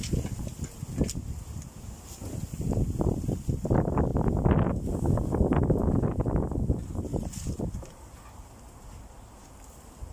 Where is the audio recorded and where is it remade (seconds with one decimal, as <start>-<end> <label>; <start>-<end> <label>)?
0.0-10.1 recorded